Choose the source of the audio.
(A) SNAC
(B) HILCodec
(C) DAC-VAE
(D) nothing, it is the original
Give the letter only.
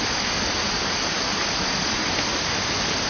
D